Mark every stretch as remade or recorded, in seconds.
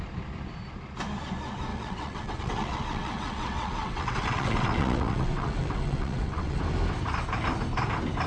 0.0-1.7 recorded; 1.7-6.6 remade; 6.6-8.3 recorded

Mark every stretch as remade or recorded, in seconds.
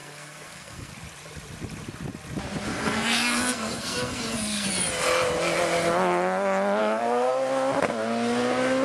0.0-0.9 remade; 0.9-2.7 recorded; 2.7-4.7 remade; 4.7-6.8 recorded; 6.8-7.3 remade; 7.3-8.8 recorded